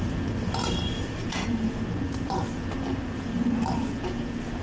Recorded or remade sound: recorded